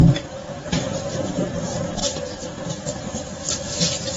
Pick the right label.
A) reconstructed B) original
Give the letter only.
B